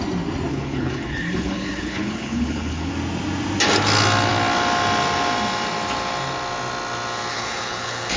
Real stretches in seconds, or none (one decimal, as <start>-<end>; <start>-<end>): 0.0-0.5; 2.9-7.3